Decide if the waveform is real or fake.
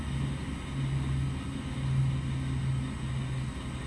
real